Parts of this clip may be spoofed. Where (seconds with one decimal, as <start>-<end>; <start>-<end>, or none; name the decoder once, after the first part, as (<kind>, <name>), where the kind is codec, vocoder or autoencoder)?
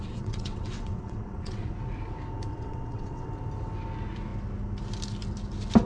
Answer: 0.0-1.7 (vocoder, WaveNeXt); 2.5-3.3